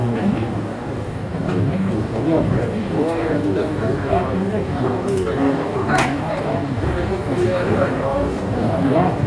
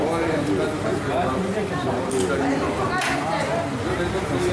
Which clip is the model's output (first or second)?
first